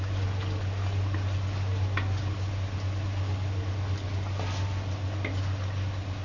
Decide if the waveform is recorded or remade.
recorded